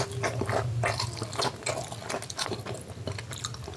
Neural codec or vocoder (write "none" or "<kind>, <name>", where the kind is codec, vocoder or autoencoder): none